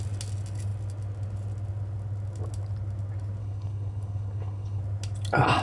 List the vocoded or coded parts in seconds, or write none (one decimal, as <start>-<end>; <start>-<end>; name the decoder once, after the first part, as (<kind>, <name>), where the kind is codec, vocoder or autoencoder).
3.4-4.8 (codec, HILCodec)